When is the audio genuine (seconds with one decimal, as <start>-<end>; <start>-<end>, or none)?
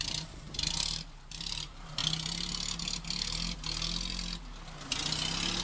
2.0-5.6